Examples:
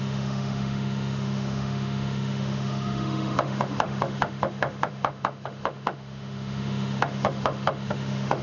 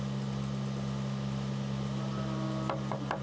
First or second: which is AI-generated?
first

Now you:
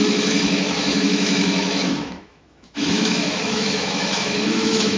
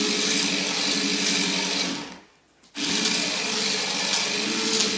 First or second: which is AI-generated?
first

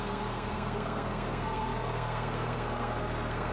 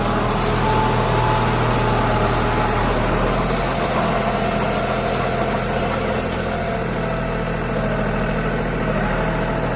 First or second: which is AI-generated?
first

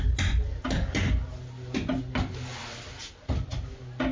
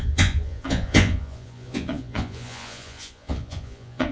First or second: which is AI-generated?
second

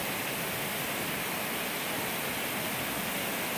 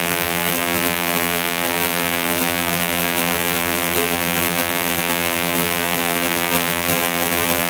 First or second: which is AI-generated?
second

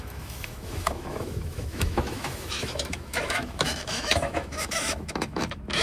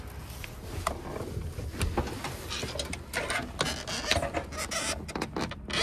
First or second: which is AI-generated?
first